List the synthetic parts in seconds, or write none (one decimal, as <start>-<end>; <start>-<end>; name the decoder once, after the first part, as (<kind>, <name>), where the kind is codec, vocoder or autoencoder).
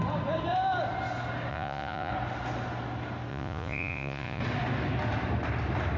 1.5-2.1 (vocoder, Vocos); 3.3-4.4